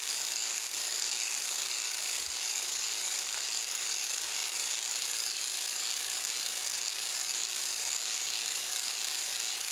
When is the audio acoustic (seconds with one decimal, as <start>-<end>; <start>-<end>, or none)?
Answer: none